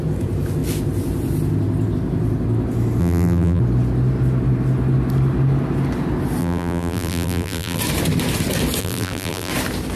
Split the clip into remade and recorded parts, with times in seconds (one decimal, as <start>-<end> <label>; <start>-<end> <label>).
0.0-3.0 recorded; 3.0-3.6 remade; 3.6-6.4 recorded; 6.4-7.8 remade; 7.8-8.8 recorded; 8.8-9.5 remade; 9.5-10.0 recorded